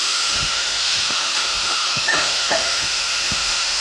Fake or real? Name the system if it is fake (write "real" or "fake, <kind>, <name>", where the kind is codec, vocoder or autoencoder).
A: fake, autoencoder, DAC-VAE